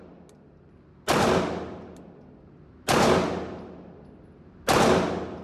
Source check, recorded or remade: recorded